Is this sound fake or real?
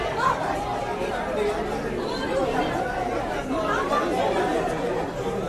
real